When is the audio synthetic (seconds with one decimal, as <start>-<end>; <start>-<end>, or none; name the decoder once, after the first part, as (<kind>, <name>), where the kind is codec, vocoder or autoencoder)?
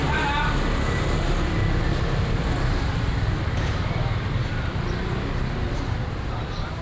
none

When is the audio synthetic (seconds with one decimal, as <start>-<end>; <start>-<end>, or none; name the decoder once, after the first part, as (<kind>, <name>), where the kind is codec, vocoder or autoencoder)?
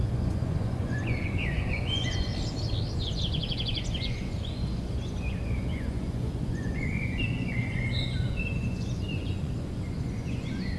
0.0-2.3 (vocoder, Vocos); 2.9-10.8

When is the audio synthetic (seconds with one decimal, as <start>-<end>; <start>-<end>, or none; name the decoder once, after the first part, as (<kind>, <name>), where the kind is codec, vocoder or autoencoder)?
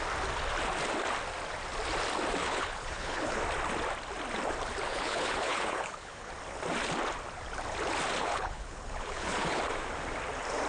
2.4-3.4 (codec, HILCodec); 4.9-6.3; 8.2-9.6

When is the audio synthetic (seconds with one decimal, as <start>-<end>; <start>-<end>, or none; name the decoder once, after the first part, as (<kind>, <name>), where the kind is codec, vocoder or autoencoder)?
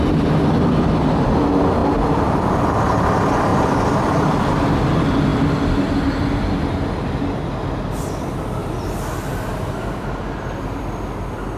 none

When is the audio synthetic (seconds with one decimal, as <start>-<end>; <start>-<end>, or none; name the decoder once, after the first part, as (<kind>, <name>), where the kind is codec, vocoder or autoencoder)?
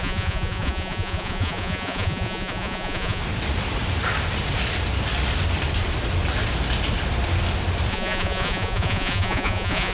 0.0-3.2 (vocoder, Vocos); 7.9-9.9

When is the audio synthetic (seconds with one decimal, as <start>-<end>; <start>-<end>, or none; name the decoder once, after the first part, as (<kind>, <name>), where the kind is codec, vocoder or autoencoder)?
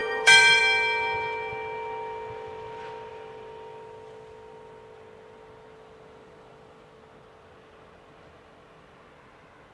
0.0-0.6 (vocoder, BigVGAN v2)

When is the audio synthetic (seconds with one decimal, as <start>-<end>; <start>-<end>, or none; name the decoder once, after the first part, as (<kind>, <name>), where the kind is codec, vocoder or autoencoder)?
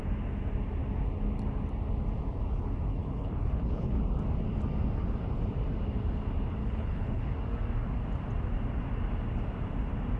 2.9-4.0 (codec, HILCodec); 6.6-7.3